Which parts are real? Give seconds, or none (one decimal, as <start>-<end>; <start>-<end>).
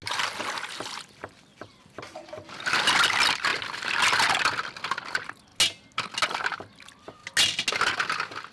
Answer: 0.0-1.5; 2.5-8.5